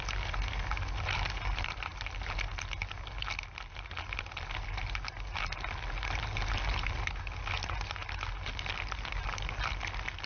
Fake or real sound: real